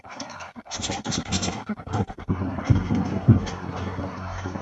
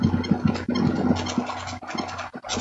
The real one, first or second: second